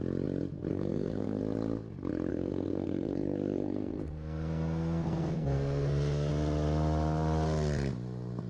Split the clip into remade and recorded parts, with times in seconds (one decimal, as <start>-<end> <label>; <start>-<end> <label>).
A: 0.0-0.7 recorded; 0.7-1.4 remade; 1.4-2.3 recorded; 2.3-6.3 remade; 6.3-8.5 recorded

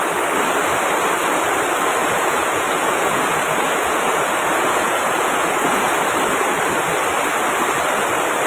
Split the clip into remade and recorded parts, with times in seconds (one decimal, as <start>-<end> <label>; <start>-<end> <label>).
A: 0.0-2.0 recorded; 2.0-6.0 remade; 6.0-8.5 recorded